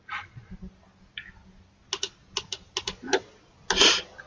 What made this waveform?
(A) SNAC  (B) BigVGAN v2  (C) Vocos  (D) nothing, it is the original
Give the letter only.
D